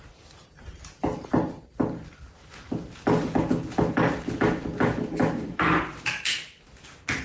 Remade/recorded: recorded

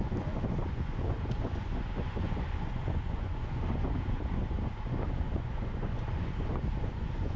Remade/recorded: remade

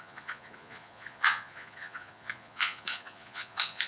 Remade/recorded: remade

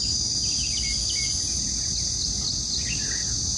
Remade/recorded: recorded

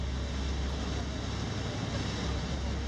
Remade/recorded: recorded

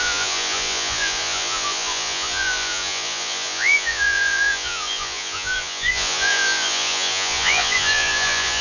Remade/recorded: remade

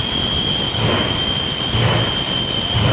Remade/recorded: recorded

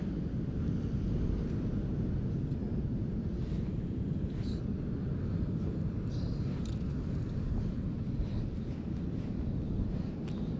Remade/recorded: recorded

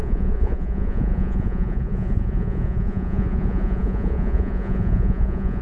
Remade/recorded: remade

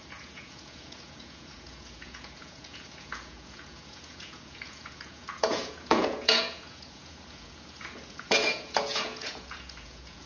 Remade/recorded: remade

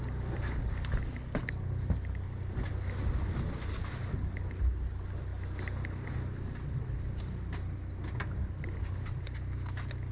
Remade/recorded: recorded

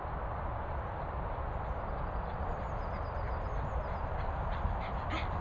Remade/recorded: recorded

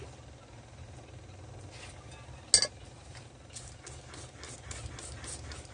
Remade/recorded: recorded